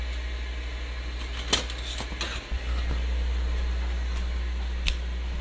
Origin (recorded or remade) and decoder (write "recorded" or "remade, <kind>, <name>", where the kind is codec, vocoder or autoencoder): recorded